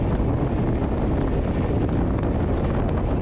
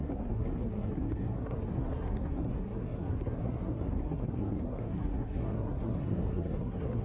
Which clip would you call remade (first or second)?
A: second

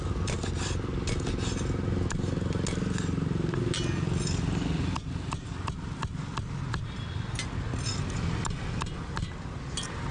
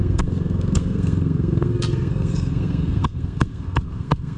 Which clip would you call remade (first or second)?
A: second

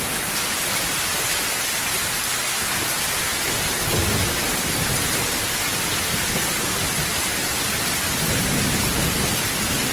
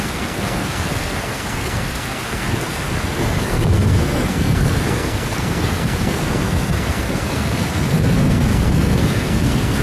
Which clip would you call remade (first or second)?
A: second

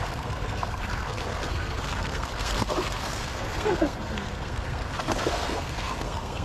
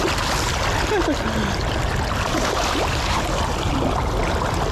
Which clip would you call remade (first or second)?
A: first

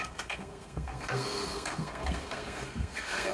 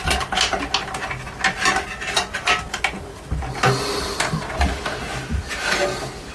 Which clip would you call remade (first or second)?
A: first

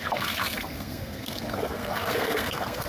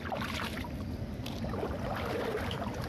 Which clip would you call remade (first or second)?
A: first